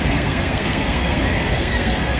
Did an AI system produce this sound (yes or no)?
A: yes